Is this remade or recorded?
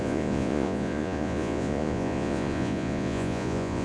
remade